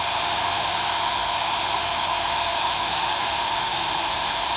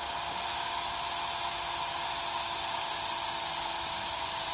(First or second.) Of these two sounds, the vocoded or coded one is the first